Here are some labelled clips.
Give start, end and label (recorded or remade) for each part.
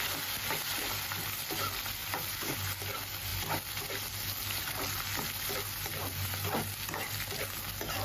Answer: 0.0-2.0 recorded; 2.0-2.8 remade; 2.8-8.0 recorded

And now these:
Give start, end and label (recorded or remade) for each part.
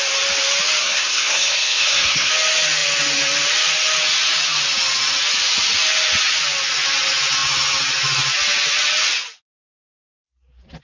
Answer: 0.0-0.8 recorded; 0.8-2.3 remade; 2.3-10.8 recorded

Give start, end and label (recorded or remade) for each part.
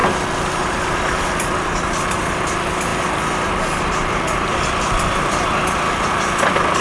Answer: 0.0-6.8 remade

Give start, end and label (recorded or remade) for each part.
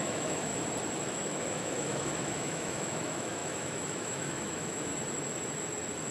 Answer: 0.0-0.5 remade; 0.5-1.1 recorded; 1.1-4.9 remade; 4.9-6.1 recorded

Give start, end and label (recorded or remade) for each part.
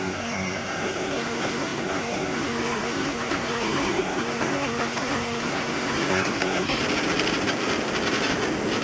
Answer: 0.0-6.8 remade; 6.8-8.8 recorded